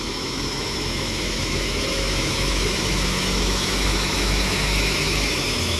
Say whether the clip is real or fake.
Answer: fake